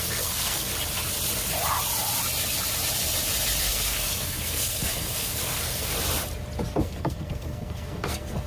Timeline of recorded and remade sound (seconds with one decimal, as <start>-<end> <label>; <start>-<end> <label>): 0.0-0.7 remade; 0.7-3.6 recorded; 3.6-5.9 remade; 5.9-6.8 recorded; 6.8-8.5 remade